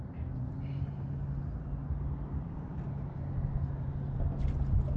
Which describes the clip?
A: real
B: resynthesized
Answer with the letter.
A